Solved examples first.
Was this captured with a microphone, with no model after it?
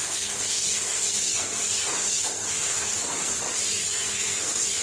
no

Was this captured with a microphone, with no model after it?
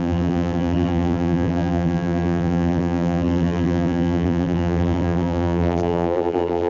no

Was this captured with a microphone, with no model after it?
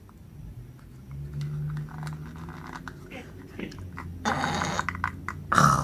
yes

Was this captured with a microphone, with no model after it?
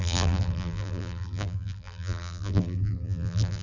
no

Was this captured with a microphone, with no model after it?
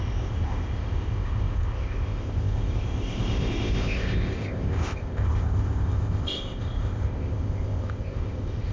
no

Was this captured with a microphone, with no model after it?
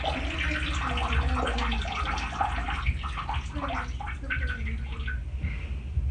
yes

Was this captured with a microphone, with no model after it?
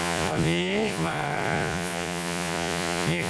no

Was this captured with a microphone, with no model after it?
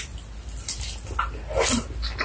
yes